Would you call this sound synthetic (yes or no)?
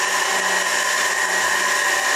no